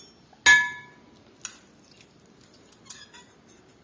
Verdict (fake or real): real